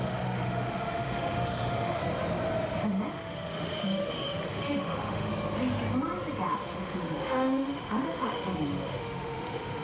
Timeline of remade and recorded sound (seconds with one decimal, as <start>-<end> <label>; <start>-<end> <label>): 0.0-2.0 remade; 2.0-3.1 recorded; 3.1-5.3 remade; 5.3-6.5 recorded; 6.5-9.8 remade